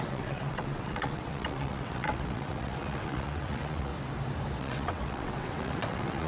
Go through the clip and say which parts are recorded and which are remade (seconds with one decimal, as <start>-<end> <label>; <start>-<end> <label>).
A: 0.0-3.9 remade; 3.9-4.6 recorded; 4.6-6.3 remade